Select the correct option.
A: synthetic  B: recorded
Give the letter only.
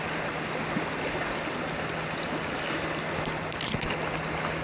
B